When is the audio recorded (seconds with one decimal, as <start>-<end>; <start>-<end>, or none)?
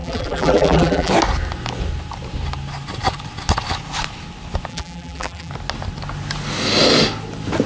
1.1-4.7; 5.5-7.7